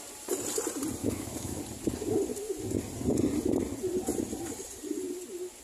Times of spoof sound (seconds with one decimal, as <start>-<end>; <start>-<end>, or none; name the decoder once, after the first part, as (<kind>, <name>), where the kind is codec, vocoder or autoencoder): 1.0-1.6 (autoencoder, DAC-VAE)